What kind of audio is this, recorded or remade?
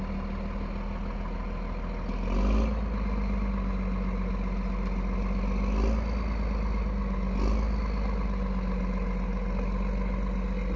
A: recorded